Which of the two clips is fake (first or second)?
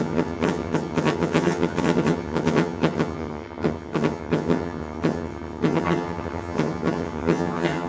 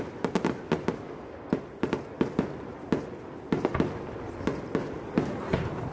first